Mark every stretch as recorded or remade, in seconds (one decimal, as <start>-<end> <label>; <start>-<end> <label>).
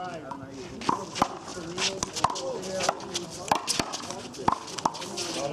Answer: 0.0-5.5 recorded